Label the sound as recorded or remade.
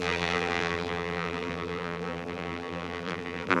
remade